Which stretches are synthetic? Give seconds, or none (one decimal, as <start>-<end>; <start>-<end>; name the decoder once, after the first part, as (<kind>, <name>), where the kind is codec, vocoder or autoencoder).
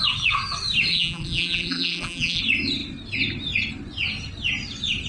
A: 0.9-2.4 (vocoder, BigVGAN v2)